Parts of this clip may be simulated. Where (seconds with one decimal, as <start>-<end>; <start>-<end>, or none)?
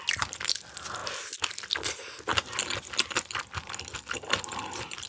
none